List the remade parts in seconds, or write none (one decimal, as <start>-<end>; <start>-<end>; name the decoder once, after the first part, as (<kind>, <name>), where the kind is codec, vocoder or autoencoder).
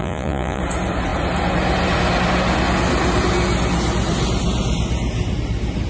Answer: 0.0-0.6 (vocoder, Vocos)